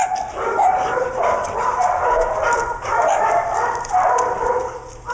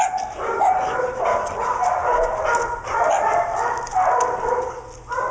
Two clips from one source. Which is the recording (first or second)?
second